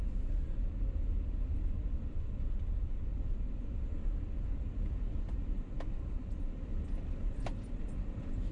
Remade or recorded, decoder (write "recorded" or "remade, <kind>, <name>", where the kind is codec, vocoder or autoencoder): recorded